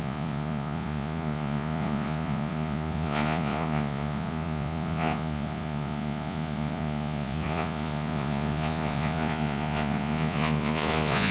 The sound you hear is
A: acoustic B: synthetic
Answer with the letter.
B